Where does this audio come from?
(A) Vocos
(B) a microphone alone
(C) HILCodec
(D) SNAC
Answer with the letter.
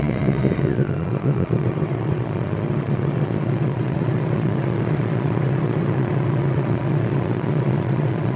A